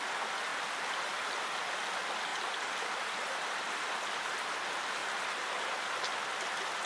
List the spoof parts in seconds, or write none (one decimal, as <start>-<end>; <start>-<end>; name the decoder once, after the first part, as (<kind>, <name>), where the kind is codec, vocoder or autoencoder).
2.3-4.3 (vocoder, BigVGAN v2)